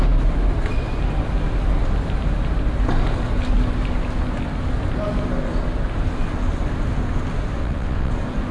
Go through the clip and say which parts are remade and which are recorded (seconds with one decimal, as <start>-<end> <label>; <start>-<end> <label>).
0.0-7.6 recorded; 7.6-8.1 remade; 8.1-8.5 recorded